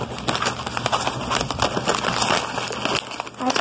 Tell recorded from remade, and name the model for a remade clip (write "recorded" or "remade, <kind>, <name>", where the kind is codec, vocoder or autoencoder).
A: recorded